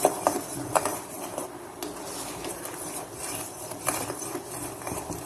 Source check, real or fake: fake